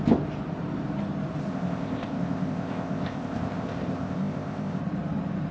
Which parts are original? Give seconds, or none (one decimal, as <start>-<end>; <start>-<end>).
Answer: 0.0-1.5; 4.8-5.5